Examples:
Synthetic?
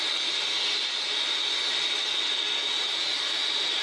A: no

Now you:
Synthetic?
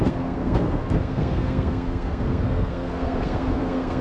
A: yes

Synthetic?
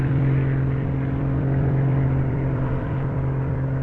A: yes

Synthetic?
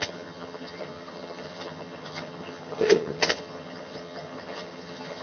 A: yes